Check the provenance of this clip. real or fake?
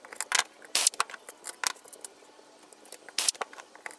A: real